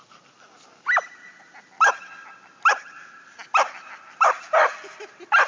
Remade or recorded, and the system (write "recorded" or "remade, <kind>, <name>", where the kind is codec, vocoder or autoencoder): recorded